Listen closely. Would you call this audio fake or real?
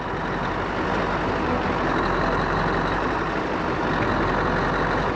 real